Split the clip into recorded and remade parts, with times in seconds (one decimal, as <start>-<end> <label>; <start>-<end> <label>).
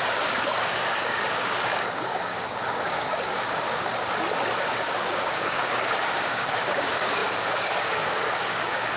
0.0-3.9 remade; 3.9-4.6 recorded; 4.6-9.0 remade